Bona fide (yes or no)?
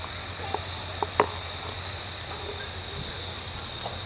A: yes